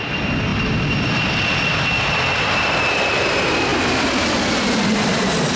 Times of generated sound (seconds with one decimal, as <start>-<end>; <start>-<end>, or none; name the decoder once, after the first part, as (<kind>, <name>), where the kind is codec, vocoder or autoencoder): none